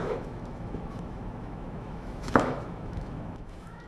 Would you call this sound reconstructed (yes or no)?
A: yes